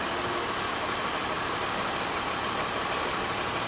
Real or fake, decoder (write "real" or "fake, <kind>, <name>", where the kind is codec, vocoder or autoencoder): real